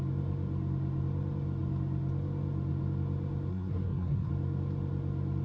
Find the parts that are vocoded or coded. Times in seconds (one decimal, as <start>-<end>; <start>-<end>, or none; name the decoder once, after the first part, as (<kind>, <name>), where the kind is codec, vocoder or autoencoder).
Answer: 3.5-4.3 (codec, SNAC)